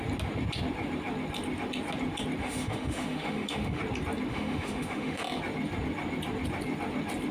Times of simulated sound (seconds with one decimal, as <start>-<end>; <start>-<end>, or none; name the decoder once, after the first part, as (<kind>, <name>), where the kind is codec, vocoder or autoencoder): 2.4-3.8 (autoencoder, DAC-VAE); 4.3-5.2